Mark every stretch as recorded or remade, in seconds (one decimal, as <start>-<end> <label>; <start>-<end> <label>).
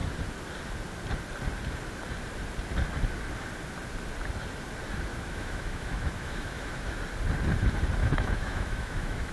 0.0-5.1 recorded; 5.1-7.0 remade; 7.0-8.0 recorded; 8.0-9.3 remade